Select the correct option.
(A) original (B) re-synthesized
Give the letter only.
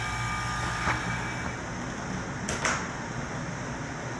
A